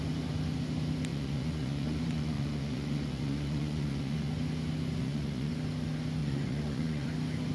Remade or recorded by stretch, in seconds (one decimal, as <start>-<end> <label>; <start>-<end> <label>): 0.0-1.1 recorded; 1.1-4.3 remade; 4.3-5.0 recorded; 5.0-5.5 remade; 5.5-6.2 recorded; 6.2-7.1 remade; 7.1-7.5 recorded